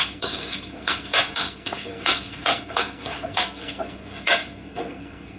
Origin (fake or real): fake